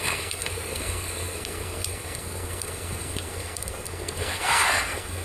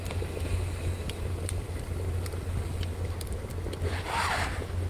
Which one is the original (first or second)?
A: second